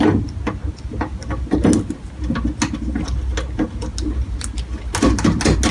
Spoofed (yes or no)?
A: no